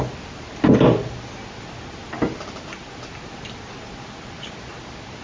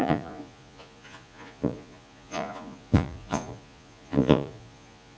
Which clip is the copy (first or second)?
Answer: second